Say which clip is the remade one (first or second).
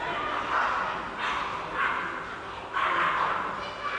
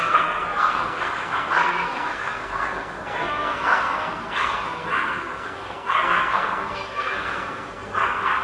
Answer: second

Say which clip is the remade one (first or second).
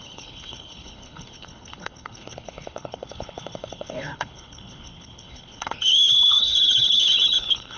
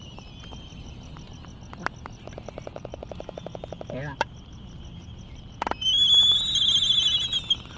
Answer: first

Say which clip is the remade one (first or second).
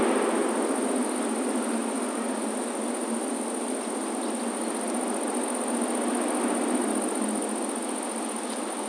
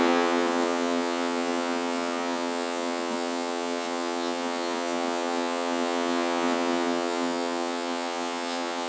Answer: second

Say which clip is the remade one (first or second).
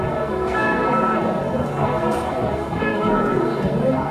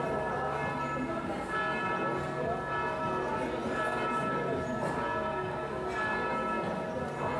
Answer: first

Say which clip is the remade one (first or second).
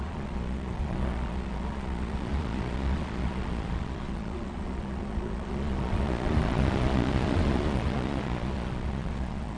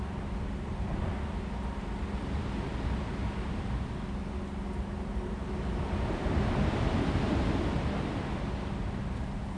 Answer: first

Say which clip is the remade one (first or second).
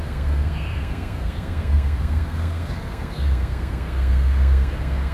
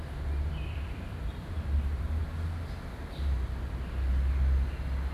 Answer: first